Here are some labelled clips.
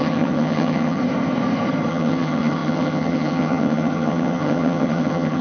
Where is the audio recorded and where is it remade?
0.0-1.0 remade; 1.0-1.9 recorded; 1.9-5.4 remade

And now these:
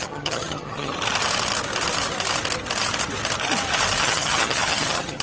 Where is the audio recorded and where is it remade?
0.0-0.9 remade; 0.9-4.0 recorded; 4.0-5.2 remade

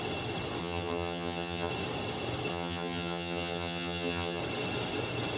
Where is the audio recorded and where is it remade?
0.0-0.6 recorded; 0.6-1.7 remade; 1.7-2.5 recorded; 2.5-4.4 remade; 4.4-5.4 recorded

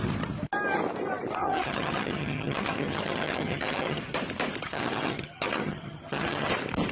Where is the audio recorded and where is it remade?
0.0-1.4 recorded; 1.4-4.0 remade; 4.0-4.6 recorded; 4.6-6.5 remade; 6.5-6.9 recorded

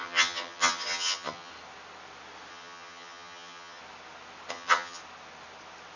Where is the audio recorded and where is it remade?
0.0-1.5 remade; 1.5-2.5 recorded; 2.5-3.8 remade; 3.8-4.5 recorded; 4.5-5.0 remade; 5.0-6.0 recorded